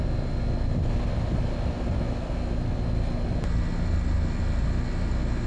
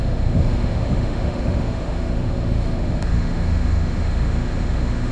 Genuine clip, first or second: first